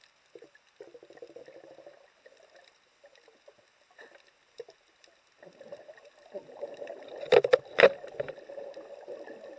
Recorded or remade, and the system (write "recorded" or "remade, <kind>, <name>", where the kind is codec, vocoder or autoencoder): recorded